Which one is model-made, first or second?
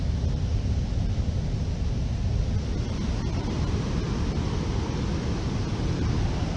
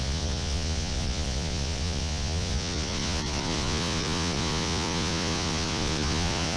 second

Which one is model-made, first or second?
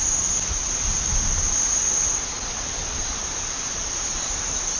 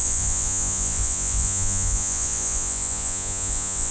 second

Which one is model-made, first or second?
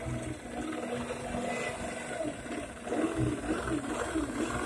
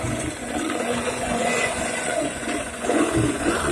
second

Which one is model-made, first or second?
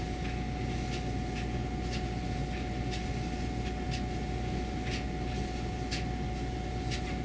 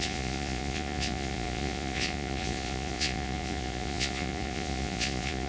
second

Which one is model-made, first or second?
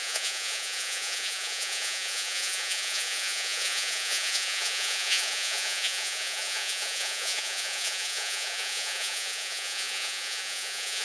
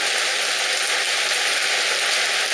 first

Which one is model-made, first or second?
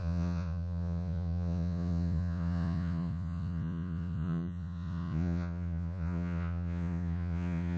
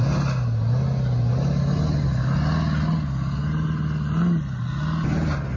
first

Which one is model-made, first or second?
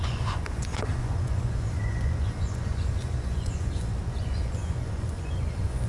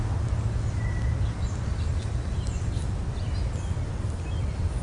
first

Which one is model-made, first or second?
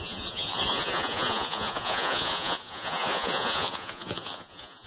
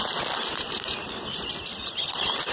first